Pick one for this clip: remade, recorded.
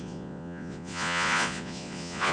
remade